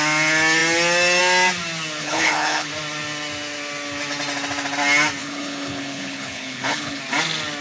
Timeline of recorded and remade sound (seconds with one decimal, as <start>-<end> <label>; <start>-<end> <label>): 0.0-2.0 recorded; 2.0-2.7 remade; 2.7-5.2 recorded; 5.2-7.0 remade; 7.0-7.6 recorded